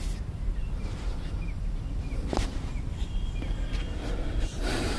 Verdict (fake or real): real